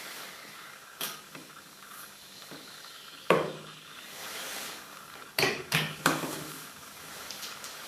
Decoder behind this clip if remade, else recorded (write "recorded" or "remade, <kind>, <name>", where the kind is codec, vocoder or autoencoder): remade, codec, DAC